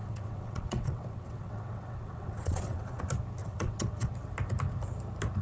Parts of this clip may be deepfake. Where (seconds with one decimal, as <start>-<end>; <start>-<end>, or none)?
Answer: 0.0-3.0; 3.4-4.1